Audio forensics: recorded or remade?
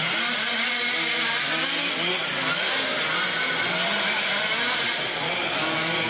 recorded